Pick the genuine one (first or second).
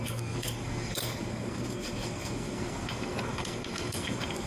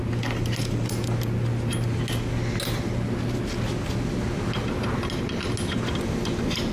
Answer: second